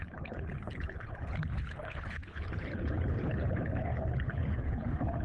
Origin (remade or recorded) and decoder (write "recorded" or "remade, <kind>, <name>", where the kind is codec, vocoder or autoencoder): remade, codec, HILCodec